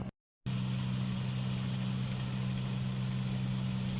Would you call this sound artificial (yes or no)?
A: no